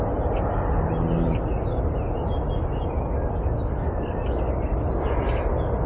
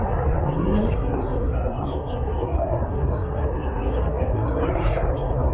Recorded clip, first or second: first